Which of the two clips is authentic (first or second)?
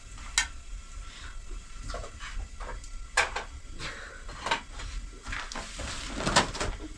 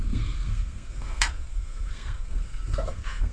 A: first